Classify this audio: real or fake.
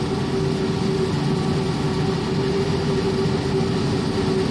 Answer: real